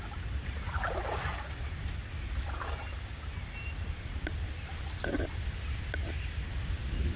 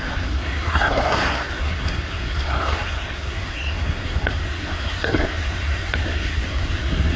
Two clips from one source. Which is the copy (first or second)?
second